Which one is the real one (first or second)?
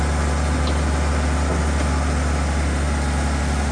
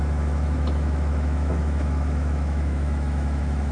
first